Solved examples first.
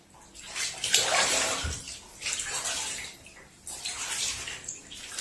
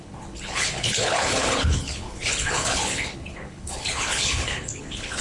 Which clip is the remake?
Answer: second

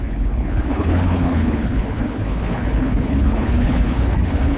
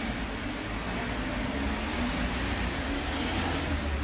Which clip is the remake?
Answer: first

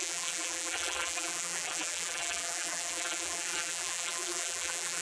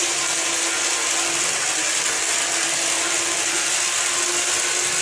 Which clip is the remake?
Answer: first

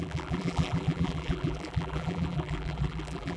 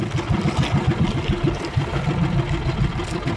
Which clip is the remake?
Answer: first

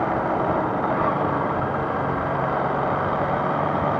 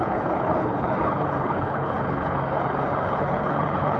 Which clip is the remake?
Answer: second